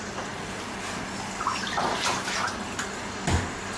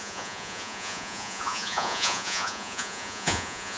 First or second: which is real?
first